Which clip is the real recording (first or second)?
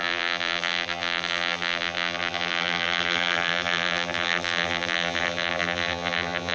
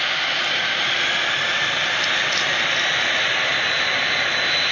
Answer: second